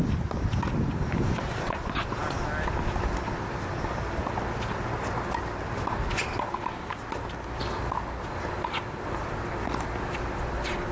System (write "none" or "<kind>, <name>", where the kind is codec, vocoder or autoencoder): none